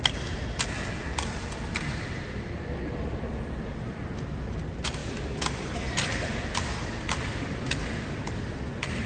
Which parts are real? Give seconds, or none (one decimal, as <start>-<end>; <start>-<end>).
0.0-9.1